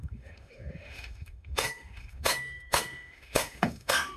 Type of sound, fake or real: fake